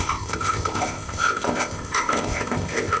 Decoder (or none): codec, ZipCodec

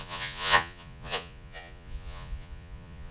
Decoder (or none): vocoder, Vocos